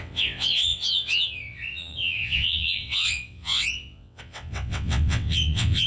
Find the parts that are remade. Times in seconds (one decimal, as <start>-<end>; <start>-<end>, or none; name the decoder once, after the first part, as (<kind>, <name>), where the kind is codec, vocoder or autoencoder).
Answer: 0.0-5.9 (vocoder, WaveNeXt)